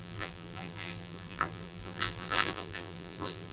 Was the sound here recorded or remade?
remade